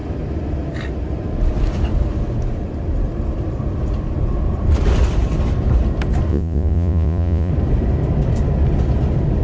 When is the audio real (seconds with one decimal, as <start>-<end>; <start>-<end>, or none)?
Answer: 0.0-6.3; 7.5-9.4